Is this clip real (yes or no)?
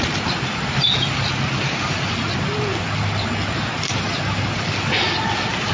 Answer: yes